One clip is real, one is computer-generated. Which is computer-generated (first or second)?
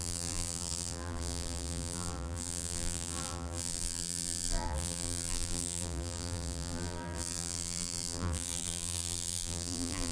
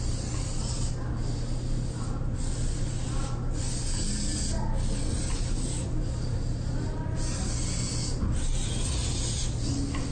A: first